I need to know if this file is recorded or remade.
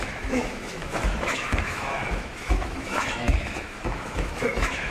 remade